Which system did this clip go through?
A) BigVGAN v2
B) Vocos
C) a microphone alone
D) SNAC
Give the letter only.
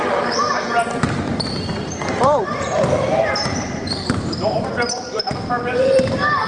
A